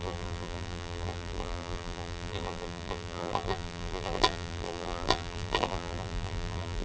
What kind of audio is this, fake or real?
fake